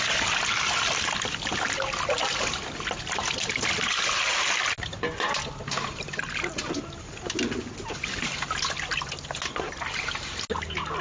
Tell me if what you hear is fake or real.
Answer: real